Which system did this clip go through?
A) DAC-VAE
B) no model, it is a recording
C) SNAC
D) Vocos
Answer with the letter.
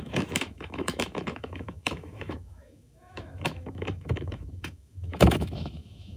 A